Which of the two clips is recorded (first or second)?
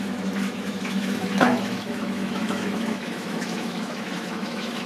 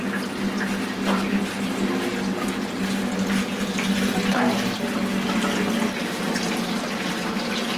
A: second